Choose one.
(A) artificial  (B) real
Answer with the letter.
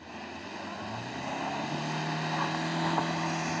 B